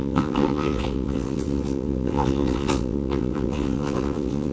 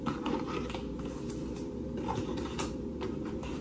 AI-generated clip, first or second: first